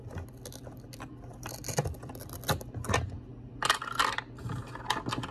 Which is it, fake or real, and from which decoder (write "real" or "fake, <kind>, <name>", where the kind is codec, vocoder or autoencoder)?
real